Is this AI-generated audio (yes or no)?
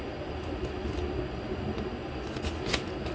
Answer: no